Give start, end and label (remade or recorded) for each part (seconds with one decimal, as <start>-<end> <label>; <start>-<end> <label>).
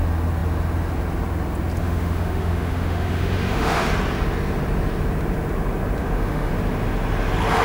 0.0-1.8 recorded; 1.8-3.9 remade; 3.9-6.0 recorded; 6.0-6.5 remade; 6.5-7.6 recorded